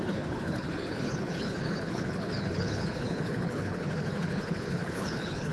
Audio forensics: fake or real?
fake